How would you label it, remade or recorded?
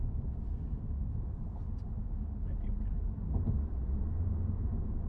remade